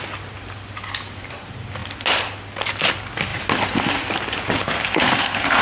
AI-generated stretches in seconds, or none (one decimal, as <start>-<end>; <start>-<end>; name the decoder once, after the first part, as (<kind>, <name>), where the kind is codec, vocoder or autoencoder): 4.6-5.6 (codec, SNAC)